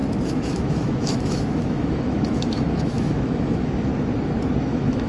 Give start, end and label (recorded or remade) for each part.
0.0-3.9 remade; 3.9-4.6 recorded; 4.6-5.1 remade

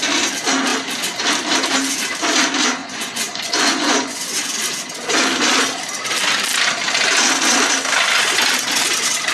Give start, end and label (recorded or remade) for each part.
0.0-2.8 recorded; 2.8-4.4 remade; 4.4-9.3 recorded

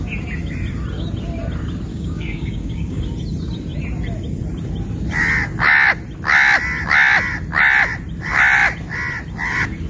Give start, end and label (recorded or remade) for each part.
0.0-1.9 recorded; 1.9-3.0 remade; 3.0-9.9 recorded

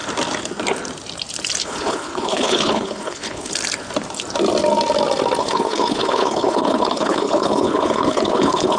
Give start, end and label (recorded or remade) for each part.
0.0-1.6 recorded; 1.6-3.5 remade; 3.5-5.4 recorded; 5.4-8.8 remade

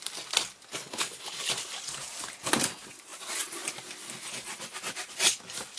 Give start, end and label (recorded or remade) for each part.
0.0-0.8 recorded; 0.8-1.4 remade; 1.4-5.8 recorded

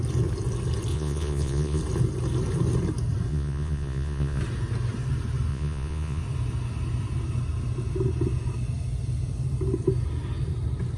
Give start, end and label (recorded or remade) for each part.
0.0-0.9 recorded; 0.9-1.8 remade; 1.8-3.3 recorded; 3.3-4.4 remade; 4.4-5.5 recorded; 5.5-6.2 remade; 6.2-11.0 recorded

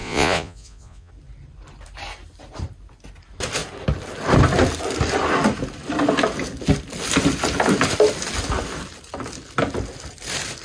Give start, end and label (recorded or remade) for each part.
0.0-1.1 remade; 1.1-10.6 recorded